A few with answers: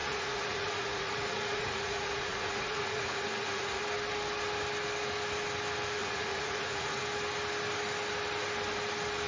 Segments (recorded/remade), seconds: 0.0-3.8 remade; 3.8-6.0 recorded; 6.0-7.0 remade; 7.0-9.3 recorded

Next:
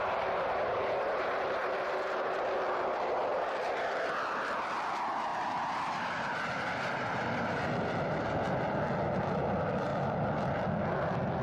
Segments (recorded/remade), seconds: 0.0-11.4 recorded

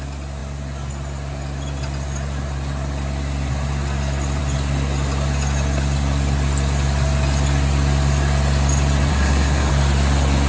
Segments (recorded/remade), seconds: 0.0-9.1 recorded; 9.1-9.7 remade; 9.7-10.5 recorded

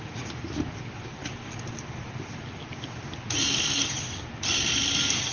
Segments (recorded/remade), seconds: 0.0-5.3 recorded

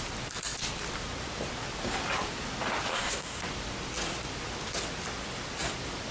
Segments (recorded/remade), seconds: 0.0-2.9 recorded; 2.9-3.4 remade; 3.4-6.1 recorded

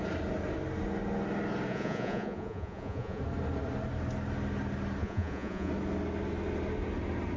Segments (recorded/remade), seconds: 0.0-1.7 recorded; 1.7-3.2 remade; 3.2-5.0 recorded; 5.0-5.7 remade; 5.7-7.4 recorded

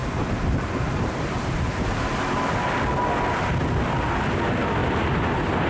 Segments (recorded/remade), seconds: 0.0-2.0 remade; 2.0-4.8 recorded; 4.8-5.7 remade